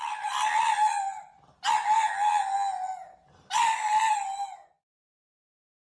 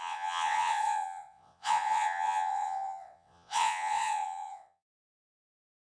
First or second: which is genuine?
first